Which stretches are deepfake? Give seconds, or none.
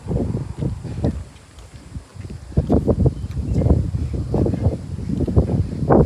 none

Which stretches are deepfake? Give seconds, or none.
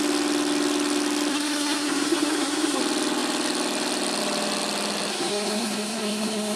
1.3-2.8 (codec, SNAC); 5.1-6.6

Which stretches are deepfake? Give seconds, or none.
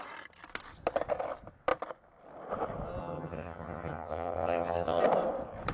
3.0-5.0 (vocoder, HiFi-GAN)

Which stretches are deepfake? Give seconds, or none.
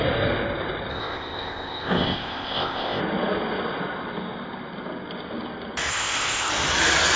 0.9-3.0 (codec, ZipCodec); 5.9-6.5